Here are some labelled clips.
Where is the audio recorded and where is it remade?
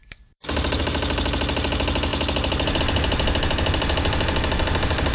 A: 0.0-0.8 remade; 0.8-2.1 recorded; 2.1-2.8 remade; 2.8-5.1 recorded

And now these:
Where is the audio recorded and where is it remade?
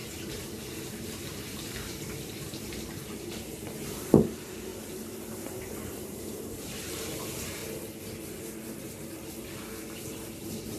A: 0.0-4.7 remade; 4.7-5.9 recorded; 5.9-7.6 remade; 7.6-10.3 recorded; 10.3-10.8 remade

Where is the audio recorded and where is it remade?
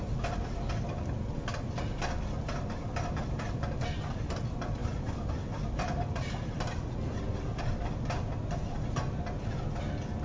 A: 0.0-4.8 recorded; 4.8-5.3 remade; 5.3-10.2 recorded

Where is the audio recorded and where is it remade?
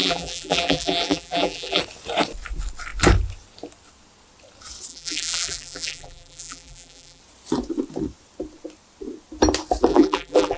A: 0.0-1.8 remade; 1.8-4.9 recorded; 4.9-7.2 remade; 7.2-9.9 recorded; 9.9-10.6 remade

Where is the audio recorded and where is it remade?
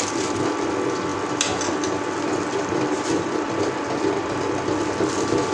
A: 0.0-1.1 recorded; 1.1-3.6 remade; 3.6-5.5 recorded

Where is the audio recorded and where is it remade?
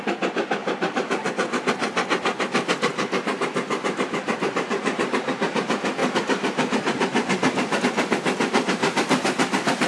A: 0.0-0.6 recorded; 0.6-1.3 remade; 1.3-2.9 recorded; 2.9-5.3 remade; 5.3-6.0 recorded; 6.0-7.8 remade; 7.8-9.9 recorded